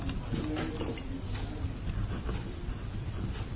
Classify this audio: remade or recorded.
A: recorded